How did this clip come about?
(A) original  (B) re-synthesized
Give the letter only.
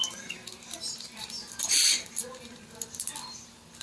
A